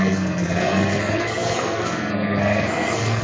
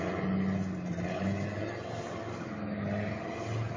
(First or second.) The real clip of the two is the second